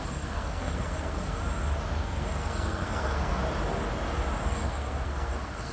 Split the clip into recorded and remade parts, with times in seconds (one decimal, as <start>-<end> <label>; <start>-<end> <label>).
0.0-1.4 remade; 1.4-2.0 recorded; 2.0-3.4 remade; 3.4-4.5 recorded; 4.5-5.7 remade